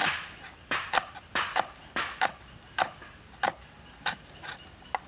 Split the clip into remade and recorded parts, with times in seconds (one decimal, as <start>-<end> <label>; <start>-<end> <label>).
0.0-5.1 recorded